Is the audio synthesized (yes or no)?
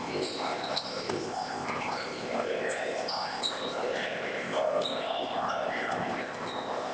yes